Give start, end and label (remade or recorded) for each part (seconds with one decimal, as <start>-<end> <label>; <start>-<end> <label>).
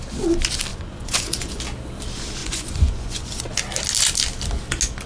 0.0-0.7 recorded; 0.7-1.6 remade; 1.6-2.4 recorded; 2.4-3.4 remade; 3.4-5.1 recorded